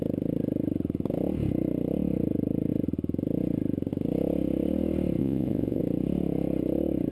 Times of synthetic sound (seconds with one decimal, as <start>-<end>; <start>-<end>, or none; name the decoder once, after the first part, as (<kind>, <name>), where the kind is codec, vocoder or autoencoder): 5.2-5.8 (vocoder, Vocos)